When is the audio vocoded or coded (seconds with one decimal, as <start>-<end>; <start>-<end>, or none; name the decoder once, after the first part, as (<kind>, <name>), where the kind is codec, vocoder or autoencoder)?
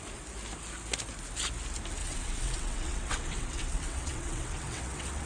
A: 2.0-5.3 (vocoder, WaveNeXt)